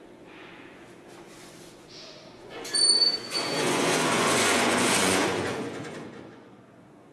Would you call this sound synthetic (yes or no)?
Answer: yes